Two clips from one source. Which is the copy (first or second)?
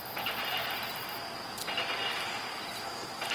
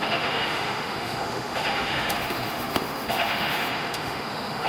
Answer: second